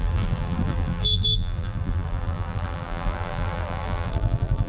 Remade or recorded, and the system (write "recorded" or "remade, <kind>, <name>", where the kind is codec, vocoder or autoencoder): remade, vocoder, BigVGAN v2